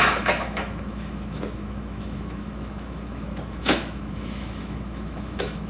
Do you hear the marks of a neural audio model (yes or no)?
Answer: yes